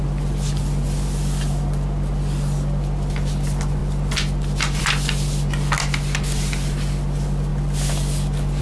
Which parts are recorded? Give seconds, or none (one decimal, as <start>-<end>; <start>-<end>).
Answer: 0.0-8.6